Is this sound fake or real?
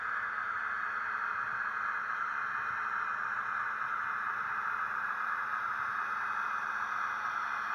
real